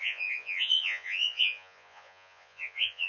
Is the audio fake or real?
fake